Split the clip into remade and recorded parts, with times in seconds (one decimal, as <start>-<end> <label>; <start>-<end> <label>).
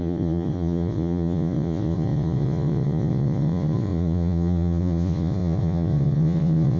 0.0-6.8 remade